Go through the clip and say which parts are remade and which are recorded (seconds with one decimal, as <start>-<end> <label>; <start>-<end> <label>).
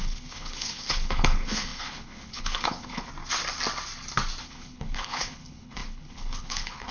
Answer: 0.0-3.1 remade; 3.1-4.4 recorded; 4.4-6.9 remade